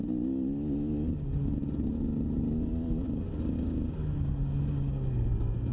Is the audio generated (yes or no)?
no